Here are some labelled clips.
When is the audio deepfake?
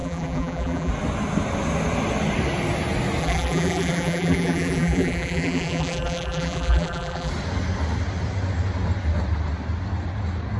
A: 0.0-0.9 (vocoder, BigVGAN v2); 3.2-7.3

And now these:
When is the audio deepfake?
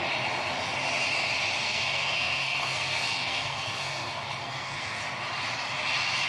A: 1.6-5.0 (codec, SNAC)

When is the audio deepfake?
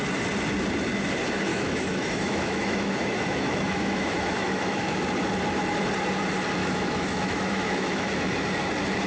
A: 1.5-5.1 (autoencoder, DAC-VAE); 6.6-8.3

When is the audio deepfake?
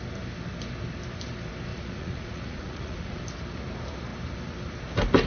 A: 1.7-3.2 (vocoder, Vocos)